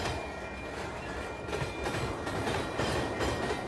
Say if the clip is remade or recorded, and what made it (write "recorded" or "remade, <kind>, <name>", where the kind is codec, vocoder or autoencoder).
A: recorded